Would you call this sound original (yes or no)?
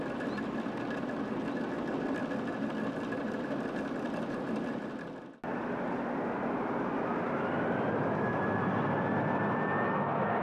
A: yes